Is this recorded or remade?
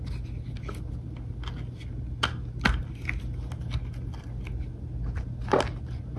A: recorded